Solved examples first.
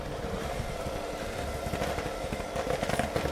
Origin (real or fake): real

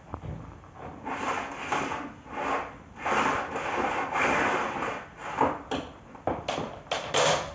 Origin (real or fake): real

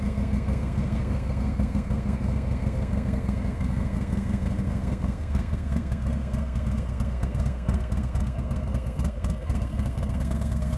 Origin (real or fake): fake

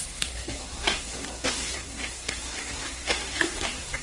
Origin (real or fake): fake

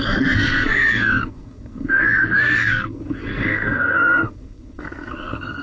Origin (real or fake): fake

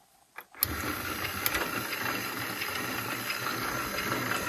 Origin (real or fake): real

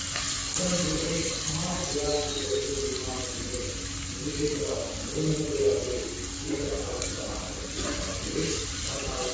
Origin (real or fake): real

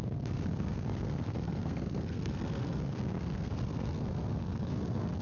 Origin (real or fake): fake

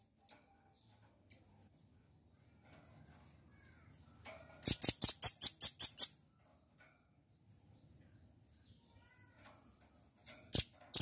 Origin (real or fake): real